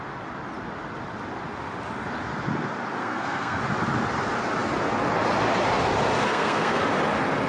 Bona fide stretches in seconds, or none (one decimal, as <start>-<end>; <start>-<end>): 0.0-3.0; 3.6-6.2; 6.8-7.5